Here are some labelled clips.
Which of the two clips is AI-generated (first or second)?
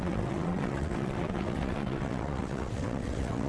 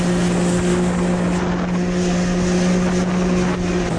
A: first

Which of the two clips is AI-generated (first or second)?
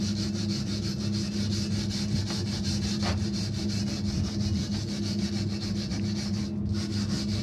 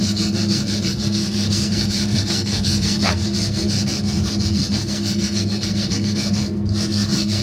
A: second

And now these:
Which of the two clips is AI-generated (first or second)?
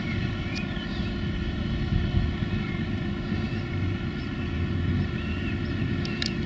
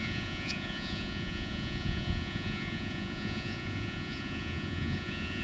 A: second